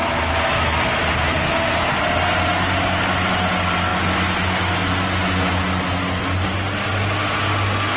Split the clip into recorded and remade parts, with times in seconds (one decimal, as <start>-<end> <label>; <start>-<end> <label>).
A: 0.0-8.0 recorded

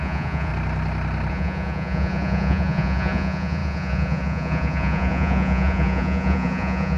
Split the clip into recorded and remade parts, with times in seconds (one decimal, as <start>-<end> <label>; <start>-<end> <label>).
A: 0.0-0.5 remade; 0.5-1.3 recorded; 1.3-7.0 remade

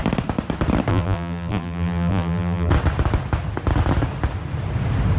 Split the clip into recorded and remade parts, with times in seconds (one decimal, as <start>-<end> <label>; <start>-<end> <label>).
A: 0.0-0.9 recorded; 0.9-2.7 remade; 2.7-5.2 recorded

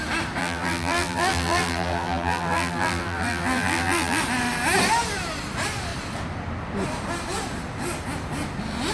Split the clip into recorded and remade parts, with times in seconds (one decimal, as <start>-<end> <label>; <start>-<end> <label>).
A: 0.0-0.4 recorded; 0.4-4.2 remade; 4.2-8.9 recorded

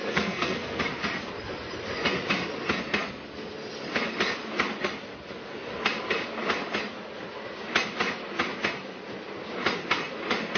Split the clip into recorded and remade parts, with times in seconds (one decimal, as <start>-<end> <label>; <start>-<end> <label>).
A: 0.0-0.8 remade; 0.8-10.6 recorded